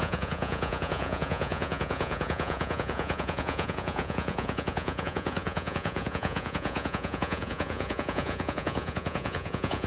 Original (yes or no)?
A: no